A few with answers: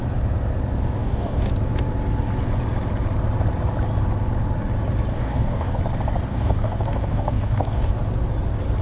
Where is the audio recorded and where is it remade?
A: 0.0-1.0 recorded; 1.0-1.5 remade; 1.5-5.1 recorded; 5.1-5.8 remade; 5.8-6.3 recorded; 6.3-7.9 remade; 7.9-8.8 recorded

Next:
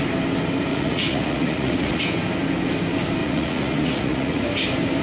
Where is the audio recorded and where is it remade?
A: 0.0-0.7 recorded; 0.7-2.0 remade; 2.0-3.2 recorded; 3.2-4.4 remade; 4.4-5.0 recorded

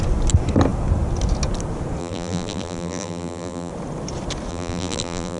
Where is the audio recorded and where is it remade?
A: 0.0-2.0 recorded; 2.0-3.7 remade; 3.7-4.5 recorded; 4.5-5.4 remade

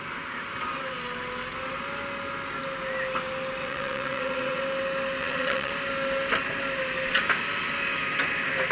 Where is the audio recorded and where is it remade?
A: 0.0-3.6 recorded; 3.6-4.6 remade; 4.6-5.2 recorded; 5.2-5.7 remade; 5.7-8.7 recorded

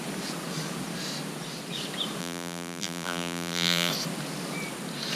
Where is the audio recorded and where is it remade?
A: 0.0-2.2 recorded; 2.2-3.9 remade; 3.9-5.2 recorded

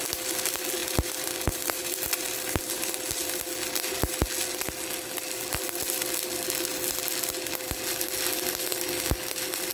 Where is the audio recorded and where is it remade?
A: 0.0-0.8 recorded; 0.8-2.9 remade; 2.9-9.7 recorded